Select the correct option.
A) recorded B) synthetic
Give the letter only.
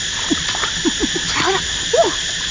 A